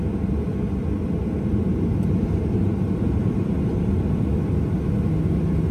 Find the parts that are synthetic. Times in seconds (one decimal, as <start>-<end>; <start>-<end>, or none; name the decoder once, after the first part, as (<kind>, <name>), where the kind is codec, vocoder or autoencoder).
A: 2.2-4.0 (vocoder, BigVGAN v2)